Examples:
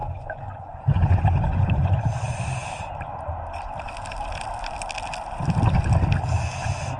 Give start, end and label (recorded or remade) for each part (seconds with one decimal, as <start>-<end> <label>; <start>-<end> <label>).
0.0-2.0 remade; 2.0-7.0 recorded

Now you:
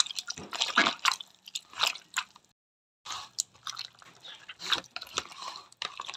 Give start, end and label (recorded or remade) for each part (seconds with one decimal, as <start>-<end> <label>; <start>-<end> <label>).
0.0-6.2 recorded

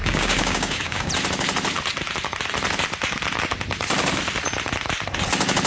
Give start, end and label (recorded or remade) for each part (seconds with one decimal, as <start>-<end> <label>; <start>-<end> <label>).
0.0-1.1 remade; 1.1-5.7 recorded

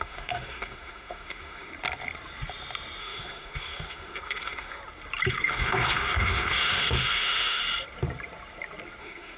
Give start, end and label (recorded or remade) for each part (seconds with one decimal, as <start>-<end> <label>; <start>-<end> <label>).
0.0-1.7 remade; 1.7-3.0 recorded; 3.0-4.8 remade; 4.8-5.3 recorded; 5.3-7.6 remade; 7.6-9.0 recorded; 9.0-9.4 remade

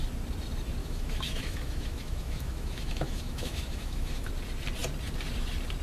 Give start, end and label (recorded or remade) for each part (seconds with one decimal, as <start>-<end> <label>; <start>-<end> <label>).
0.0-0.8 recorded; 0.8-4.3 remade; 4.3-5.8 recorded

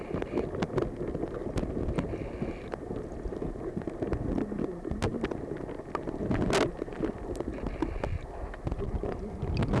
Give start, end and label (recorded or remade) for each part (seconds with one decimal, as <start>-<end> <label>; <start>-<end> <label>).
0.0-9.8 recorded

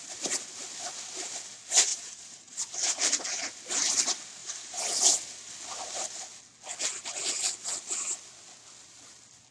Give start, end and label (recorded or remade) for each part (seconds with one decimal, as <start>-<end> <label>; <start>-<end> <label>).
0.0-1.9 recorded; 1.9-3.2 remade; 3.2-4.4 recorded; 4.4-5.0 remade; 5.0-9.5 recorded

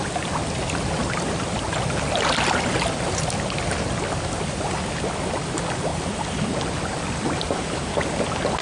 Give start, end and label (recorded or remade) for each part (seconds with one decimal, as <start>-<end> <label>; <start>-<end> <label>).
0.0-8.6 recorded